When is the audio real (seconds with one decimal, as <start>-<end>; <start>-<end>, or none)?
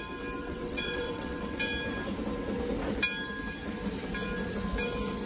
0.0-0.4; 1.6-5.3